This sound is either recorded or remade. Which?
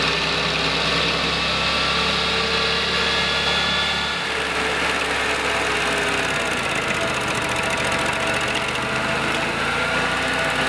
recorded